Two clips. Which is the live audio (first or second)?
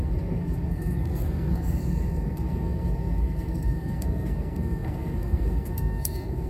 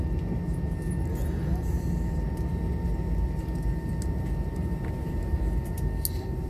second